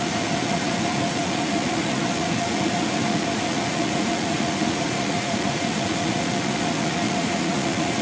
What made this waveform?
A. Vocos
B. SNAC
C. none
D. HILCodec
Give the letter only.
A